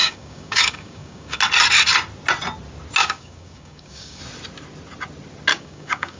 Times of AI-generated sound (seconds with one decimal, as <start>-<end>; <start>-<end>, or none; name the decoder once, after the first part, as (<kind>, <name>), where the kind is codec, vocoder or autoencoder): 0.0-1.4 (codec, DAC); 3.0-4.2; 5.5-6.2